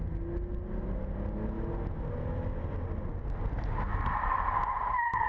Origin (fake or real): real